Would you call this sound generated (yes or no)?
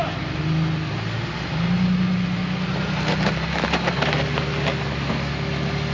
no